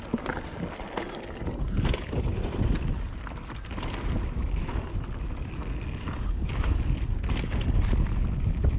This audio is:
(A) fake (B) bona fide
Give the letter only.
B